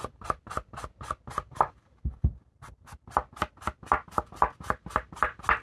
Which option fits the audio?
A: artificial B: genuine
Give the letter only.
B